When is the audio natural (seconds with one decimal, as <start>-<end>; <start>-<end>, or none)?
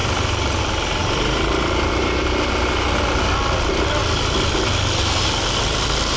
0.6-1.0; 2.5-6.2